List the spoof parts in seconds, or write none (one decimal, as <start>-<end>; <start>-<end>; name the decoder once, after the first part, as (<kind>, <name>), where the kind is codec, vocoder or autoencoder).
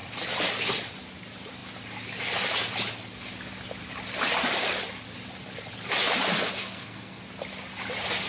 6.6-7.2 (codec, SNAC)